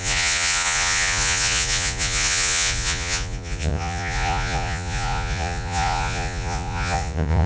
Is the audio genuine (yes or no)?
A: no